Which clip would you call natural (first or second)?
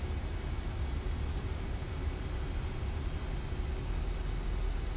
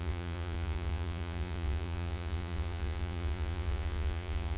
first